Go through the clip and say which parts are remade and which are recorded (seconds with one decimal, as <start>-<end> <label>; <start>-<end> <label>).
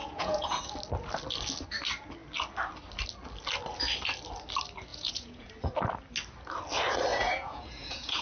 0.0-0.6 remade; 0.6-4.9 recorded; 4.9-5.5 remade; 5.5-7.1 recorded; 7.1-8.2 remade